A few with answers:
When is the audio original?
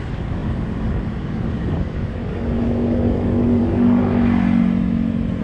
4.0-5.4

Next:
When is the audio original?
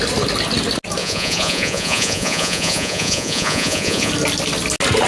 0.0-1.0; 4.1-5.1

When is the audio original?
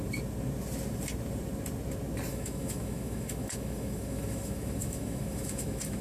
0.0-2.3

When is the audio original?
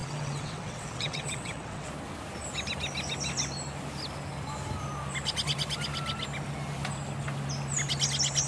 1.9-8.5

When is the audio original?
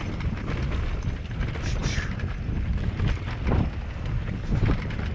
0.0-5.1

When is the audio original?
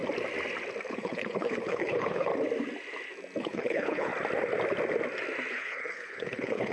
0.0-0.9; 2.3-3.4; 4.1-5.5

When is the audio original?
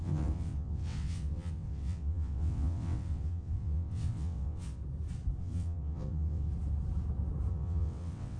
4.8-5.4; 6.5-7.5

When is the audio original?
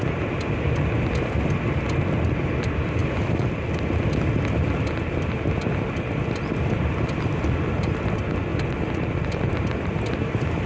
0.0-10.7